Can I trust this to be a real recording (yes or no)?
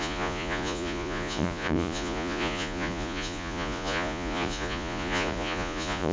no